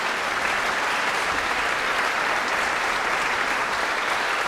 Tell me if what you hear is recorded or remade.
recorded